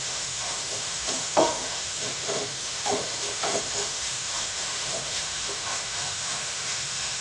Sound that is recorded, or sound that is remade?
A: remade